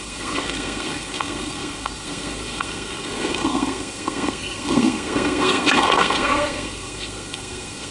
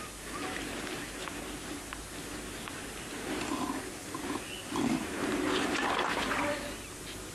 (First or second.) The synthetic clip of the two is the first